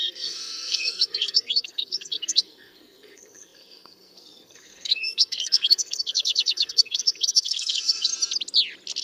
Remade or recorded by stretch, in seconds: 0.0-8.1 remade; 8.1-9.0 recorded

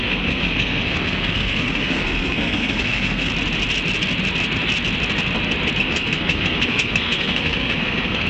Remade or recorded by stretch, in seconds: 0.0-3.3 remade; 3.3-5.8 recorded; 5.8-8.3 remade

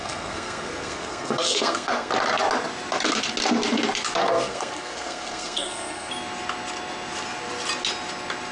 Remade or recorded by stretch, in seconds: 0.0-2.1 remade; 2.1-4.2 recorded; 4.2-6.1 remade; 6.1-8.5 recorded

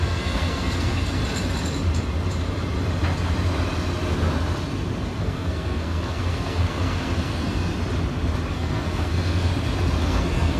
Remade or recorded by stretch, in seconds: 0.0-1.2 remade; 1.2-5.2 recorded; 5.2-7.7 remade; 7.7-8.5 recorded; 8.5-9.5 remade; 9.5-10.0 recorded; 10.0-10.6 remade

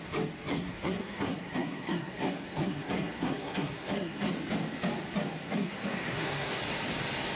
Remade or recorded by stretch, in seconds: 0.0-0.5 recorded; 0.5-4.3 remade; 4.3-5.4 recorded; 5.4-6.6 remade; 6.6-7.4 recorded

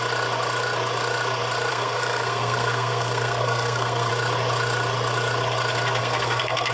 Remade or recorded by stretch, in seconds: 0.0-1.7 recorded; 1.7-4.1 remade; 4.1-6.0 recorded; 6.0-6.7 remade

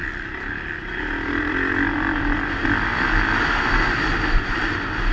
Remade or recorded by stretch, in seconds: 0.0-5.1 recorded

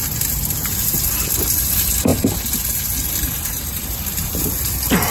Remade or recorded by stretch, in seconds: 0.0-5.1 recorded